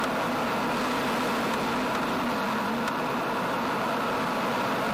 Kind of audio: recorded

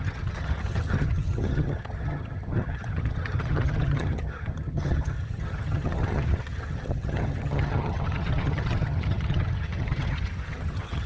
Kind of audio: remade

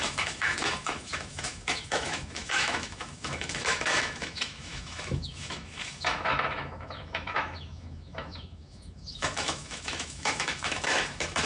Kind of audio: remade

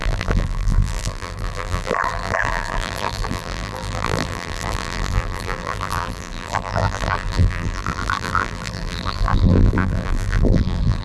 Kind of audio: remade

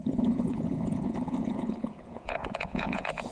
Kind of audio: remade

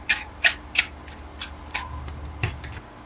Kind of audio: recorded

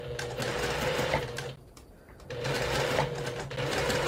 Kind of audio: recorded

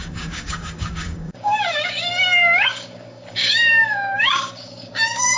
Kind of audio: remade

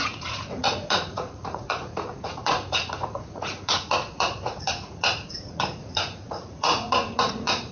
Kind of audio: remade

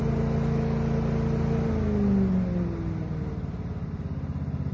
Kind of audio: recorded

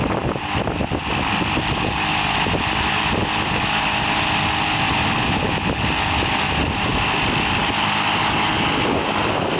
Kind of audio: recorded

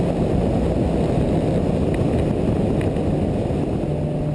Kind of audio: recorded